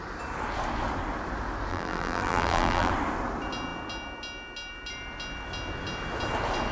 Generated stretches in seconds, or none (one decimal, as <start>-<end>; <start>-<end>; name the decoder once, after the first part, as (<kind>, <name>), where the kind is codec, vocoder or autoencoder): 1.7-2.9 (vocoder, BigVGAN v2)